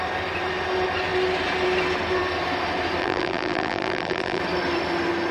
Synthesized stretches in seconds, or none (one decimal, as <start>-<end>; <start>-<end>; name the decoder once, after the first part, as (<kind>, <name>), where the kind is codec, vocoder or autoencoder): 3.0-4.4 (vocoder, BigVGAN v2)